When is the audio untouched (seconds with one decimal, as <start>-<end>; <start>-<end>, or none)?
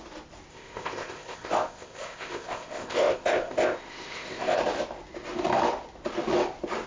0.0-0.5; 4.6-6.9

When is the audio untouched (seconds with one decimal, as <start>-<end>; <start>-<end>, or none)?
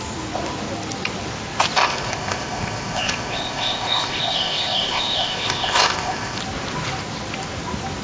0.0-1.8; 6.4-8.0